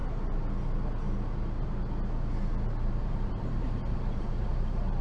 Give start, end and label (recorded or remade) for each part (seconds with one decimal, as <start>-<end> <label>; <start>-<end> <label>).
0.0-3.0 recorded; 3.0-5.0 remade